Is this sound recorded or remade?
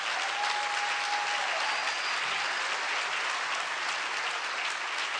recorded